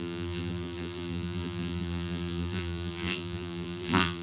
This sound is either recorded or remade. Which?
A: remade